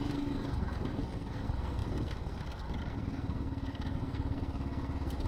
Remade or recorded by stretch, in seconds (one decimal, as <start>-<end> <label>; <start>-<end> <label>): 0.0-5.3 remade